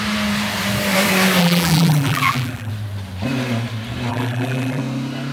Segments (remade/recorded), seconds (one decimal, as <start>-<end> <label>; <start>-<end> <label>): 0.0-1.4 recorded; 1.4-2.7 remade; 2.7-4.1 recorded; 4.1-4.8 remade; 4.8-5.3 recorded